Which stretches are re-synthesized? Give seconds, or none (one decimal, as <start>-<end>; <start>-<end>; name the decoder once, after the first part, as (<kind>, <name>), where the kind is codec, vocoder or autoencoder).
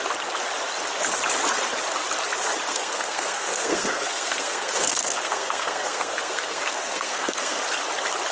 2.7-7.6 (codec, SNAC)